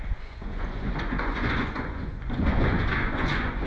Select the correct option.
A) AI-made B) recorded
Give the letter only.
A